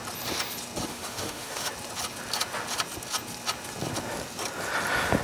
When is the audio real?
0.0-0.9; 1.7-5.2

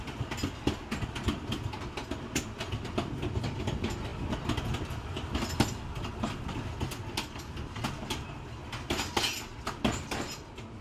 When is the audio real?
0.0-10.8